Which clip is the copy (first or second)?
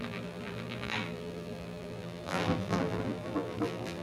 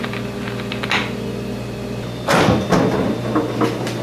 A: first